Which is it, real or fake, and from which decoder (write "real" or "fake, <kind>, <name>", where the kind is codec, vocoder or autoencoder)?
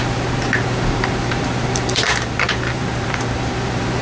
fake, vocoder, BigVGAN v2